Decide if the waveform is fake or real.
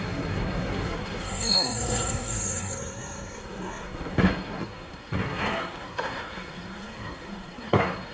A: fake